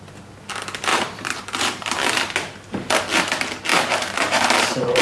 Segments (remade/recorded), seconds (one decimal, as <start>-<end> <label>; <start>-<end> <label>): 0.0-0.9 recorded; 0.9-2.7 remade; 2.7-3.7 recorded; 3.7-5.0 remade